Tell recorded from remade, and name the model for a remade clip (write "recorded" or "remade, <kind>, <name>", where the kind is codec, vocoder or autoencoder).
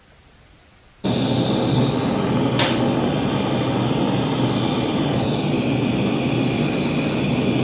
recorded